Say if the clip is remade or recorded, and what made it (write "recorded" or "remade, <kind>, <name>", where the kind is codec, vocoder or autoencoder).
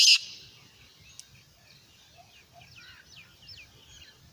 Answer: recorded